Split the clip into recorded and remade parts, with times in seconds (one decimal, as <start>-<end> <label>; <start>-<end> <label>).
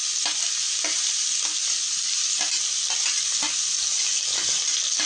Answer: 0.0-5.1 recorded